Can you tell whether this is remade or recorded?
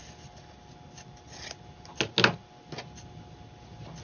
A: recorded